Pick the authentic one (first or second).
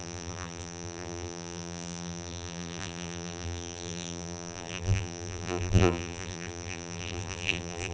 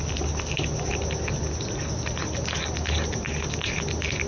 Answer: second